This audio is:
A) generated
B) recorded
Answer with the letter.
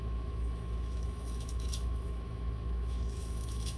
A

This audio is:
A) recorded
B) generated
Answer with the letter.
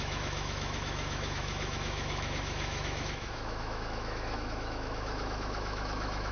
B